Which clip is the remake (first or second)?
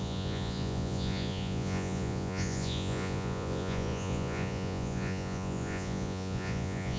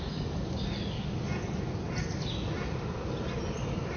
first